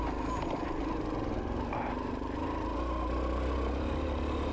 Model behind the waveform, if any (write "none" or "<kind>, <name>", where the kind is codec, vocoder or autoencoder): none